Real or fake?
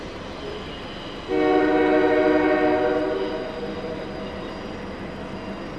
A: real